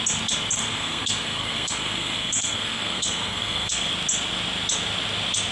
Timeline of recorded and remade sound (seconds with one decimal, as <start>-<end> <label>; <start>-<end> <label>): 0.0-0.6 recorded; 0.6-3.9 remade; 3.9-5.5 recorded